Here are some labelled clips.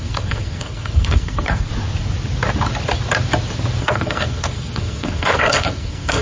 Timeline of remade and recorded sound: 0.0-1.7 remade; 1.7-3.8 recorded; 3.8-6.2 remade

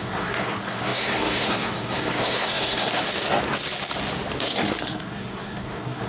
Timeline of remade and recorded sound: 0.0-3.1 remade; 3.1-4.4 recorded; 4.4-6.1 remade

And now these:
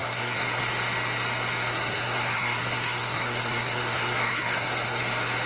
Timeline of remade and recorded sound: 0.0-0.6 remade; 0.6-1.7 recorded; 1.7-5.0 remade; 5.0-5.5 recorded

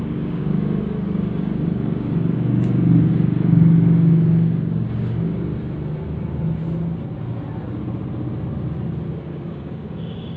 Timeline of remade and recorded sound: 0.0-5.5 remade; 5.5-9.2 recorded; 9.2-10.4 remade